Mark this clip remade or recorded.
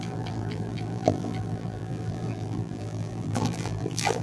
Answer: remade